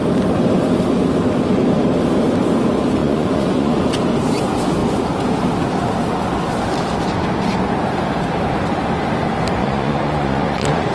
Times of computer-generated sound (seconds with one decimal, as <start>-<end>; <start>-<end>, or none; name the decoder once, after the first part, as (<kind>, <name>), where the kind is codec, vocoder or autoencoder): 3.0-3.8 (vocoder, Vocos); 9.6-10.9